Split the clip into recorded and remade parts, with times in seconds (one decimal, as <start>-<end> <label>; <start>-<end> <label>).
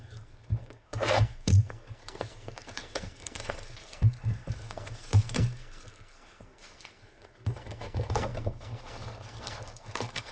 0.0-10.3 remade